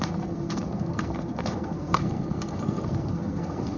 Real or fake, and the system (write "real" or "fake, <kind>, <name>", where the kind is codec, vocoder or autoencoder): fake, codec, SNAC